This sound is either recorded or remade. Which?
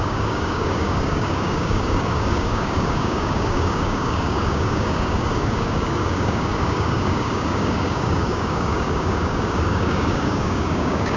remade